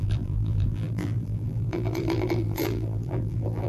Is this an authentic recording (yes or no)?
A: no